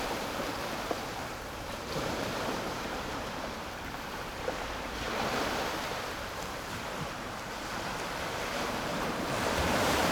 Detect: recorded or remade remade